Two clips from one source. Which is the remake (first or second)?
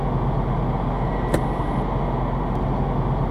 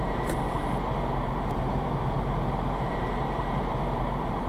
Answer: second